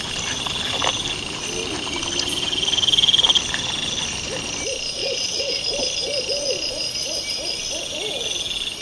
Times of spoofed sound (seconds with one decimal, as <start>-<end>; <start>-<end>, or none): 5.0-5.6